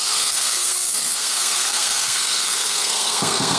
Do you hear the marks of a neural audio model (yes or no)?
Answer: yes